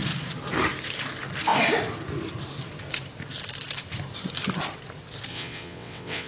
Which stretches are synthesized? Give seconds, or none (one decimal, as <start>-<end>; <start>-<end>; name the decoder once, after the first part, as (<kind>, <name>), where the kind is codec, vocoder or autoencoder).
5.3-6.3 (vocoder, WaveNeXt)